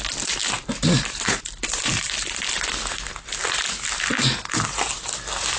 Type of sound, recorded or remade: recorded